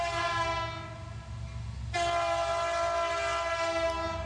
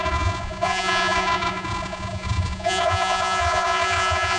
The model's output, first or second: second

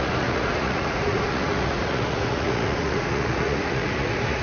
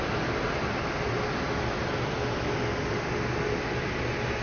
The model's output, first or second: first